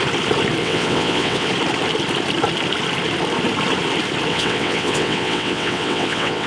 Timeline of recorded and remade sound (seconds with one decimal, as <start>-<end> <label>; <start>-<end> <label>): 0.0-0.6 recorded; 0.6-1.5 remade; 1.5-4.3 recorded; 4.3-6.5 remade